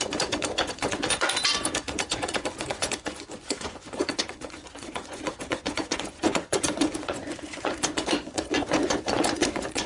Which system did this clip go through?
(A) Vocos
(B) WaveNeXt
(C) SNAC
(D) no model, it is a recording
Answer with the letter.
A